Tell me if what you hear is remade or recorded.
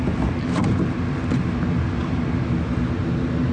recorded